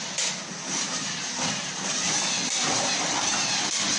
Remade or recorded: recorded